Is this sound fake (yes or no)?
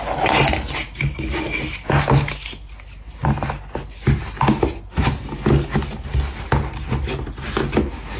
no